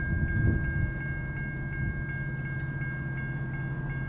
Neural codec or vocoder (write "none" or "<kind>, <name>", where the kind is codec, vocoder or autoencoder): none